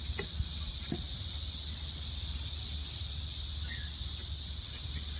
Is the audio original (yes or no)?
yes